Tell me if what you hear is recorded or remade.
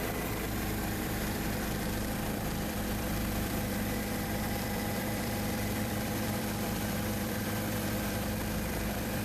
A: remade